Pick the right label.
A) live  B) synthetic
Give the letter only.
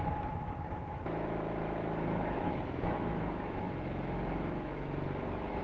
B